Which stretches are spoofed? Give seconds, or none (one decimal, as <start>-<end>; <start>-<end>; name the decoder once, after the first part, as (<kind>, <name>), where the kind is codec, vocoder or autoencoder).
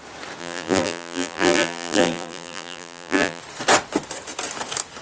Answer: 0.4-3.4 (vocoder, BigVGAN v2)